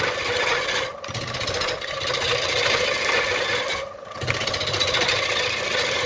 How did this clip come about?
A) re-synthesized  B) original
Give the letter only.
B